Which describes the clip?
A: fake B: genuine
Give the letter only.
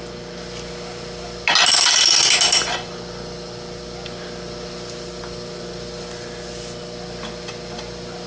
B